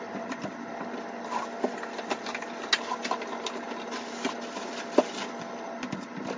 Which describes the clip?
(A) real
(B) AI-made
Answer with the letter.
A